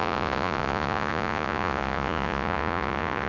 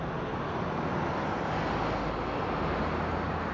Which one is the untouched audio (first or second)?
second